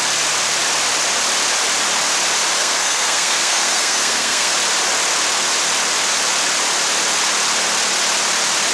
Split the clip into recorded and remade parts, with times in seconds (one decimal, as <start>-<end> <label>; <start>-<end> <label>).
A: 0.0-2.6 recorded; 2.6-4.5 remade; 4.5-8.7 recorded